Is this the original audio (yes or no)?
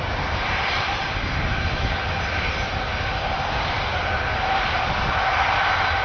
yes